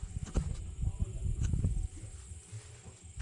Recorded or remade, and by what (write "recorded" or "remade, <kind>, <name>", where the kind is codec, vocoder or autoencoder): recorded